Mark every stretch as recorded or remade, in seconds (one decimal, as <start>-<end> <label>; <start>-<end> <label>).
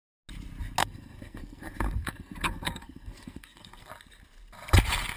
0.0-0.8 recorded; 0.8-3.9 remade; 3.9-5.2 recorded